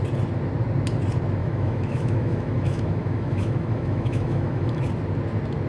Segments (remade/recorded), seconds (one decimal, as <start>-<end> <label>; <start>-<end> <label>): 0.0-1.4 recorded; 1.4-4.8 remade; 4.8-5.7 recorded